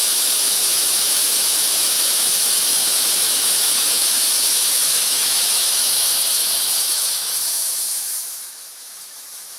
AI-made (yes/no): yes